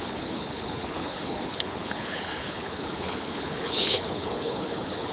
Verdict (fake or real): fake